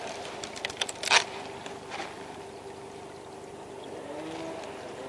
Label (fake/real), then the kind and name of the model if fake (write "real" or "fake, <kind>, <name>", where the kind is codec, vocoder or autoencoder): real